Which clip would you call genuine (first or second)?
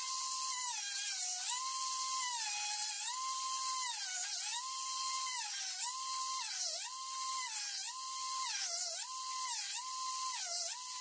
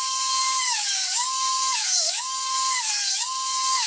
first